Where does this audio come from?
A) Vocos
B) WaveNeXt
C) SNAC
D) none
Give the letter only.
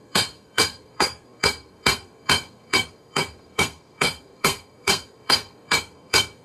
C